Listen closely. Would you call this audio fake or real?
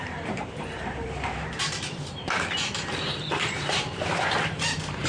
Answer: fake